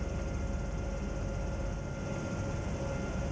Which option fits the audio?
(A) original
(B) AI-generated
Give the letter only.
A